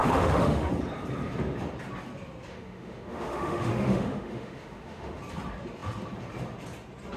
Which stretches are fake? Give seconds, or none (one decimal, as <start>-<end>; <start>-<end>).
0.0-0.7; 2.5-5.2